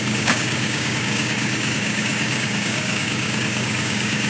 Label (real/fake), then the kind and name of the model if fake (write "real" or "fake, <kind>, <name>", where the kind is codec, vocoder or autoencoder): fake, codec, DAC